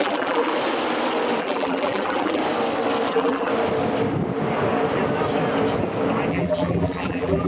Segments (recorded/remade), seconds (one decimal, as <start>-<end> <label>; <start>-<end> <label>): 0.0-0.5 remade; 0.5-1.4 recorded; 1.4-2.4 remade; 2.4-3.1 recorded; 3.1-3.5 remade; 3.5-6.3 recorded; 6.3-7.5 remade

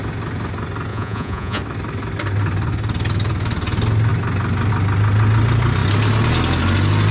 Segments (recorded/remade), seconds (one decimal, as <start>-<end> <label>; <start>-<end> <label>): 0.0-0.9 recorded; 0.9-1.6 remade; 1.6-7.1 recorded

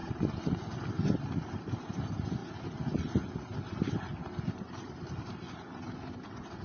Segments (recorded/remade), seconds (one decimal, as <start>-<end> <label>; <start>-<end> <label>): 0.0-2.4 remade; 2.4-4.4 recorded; 4.4-6.6 remade

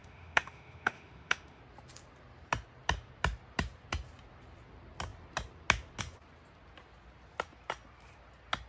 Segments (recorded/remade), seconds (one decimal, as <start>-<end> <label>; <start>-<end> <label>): 0.0-1.6 remade; 1.6-8.7 recorded

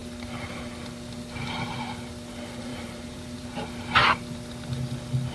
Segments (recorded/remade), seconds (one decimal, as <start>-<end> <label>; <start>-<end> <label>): 0.0-2.7 recorded; 2.7-3.5 remade; 3.5-5.3 recorded